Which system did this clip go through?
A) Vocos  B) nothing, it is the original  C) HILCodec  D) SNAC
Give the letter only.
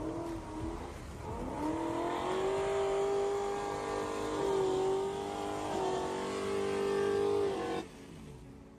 B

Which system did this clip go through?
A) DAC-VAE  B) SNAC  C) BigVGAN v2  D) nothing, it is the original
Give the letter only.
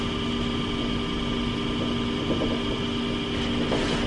D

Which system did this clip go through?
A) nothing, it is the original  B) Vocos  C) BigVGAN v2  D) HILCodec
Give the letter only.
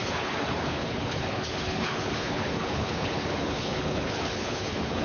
D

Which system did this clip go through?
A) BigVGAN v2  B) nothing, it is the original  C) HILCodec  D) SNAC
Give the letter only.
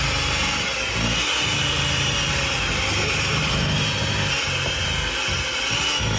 B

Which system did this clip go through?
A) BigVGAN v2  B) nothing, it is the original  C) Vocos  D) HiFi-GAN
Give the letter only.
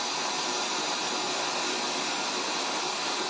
B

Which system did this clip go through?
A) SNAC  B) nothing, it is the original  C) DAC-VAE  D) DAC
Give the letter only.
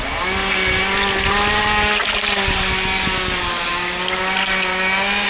B